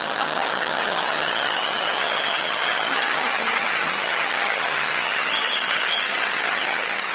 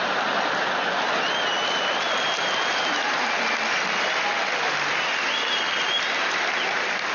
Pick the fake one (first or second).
first